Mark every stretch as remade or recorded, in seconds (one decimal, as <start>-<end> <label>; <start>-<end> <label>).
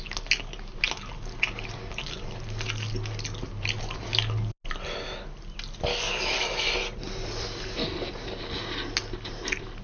0.0-5.9 recorded; 5.9-6.7 remade; 6.7-9.8 recorded